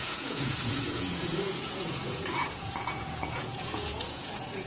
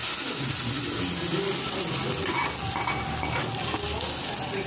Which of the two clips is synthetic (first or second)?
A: first